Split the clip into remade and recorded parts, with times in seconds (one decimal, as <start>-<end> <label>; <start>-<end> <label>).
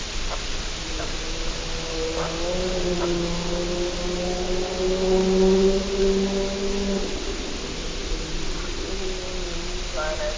0.0-10.4 recorded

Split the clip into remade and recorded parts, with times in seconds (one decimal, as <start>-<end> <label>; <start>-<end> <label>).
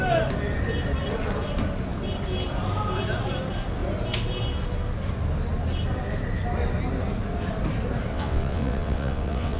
0.0-8.1 recorded; 8.1-9.6 remade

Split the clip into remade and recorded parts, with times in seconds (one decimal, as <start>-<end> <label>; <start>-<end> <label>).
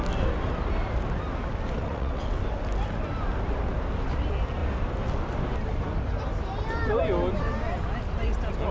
0.0-1.8 recorded; 1.8-2.4 remade; 2.4-8.7 recorded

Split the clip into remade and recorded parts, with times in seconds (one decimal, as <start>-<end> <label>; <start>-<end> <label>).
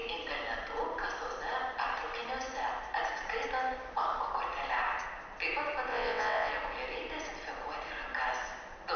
0.0-5.9 recorded; 5.9-6.5 remade; 6.5-9.0 recorded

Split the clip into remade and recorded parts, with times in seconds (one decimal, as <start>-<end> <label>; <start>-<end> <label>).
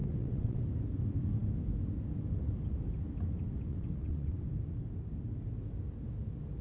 0.0-0.6 remade; 0.6-3.7 recorded; 3.7-4.4 remade; 4.4-6.6 recorded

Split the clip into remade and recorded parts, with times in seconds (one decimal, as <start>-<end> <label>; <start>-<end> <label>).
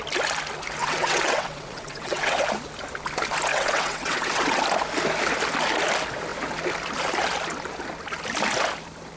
0.0-0.8 recorded; 0.8-2.4 remade; 2.4-3.5 recorded; 3.5-4.6 remade; 4.6-9.2 recorded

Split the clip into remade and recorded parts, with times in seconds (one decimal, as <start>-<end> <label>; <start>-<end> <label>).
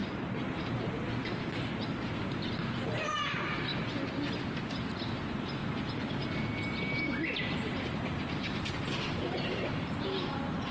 0.0-10.7 recorded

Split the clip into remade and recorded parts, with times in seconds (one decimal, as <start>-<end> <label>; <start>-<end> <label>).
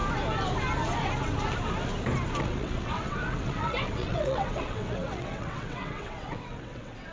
0.0-2.4 recorded; 2.4-7.1 remade